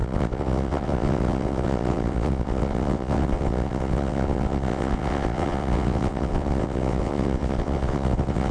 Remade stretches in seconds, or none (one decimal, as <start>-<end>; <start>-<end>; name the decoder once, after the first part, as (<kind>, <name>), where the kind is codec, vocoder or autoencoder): 0.0-8.5 (vocoder, WaveNeXt)